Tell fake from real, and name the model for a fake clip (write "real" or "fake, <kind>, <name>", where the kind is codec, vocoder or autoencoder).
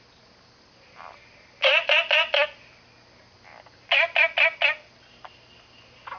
real